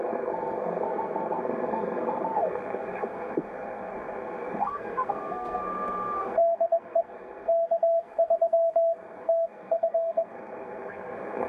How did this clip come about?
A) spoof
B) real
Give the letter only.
A